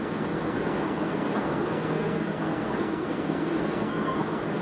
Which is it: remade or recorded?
remade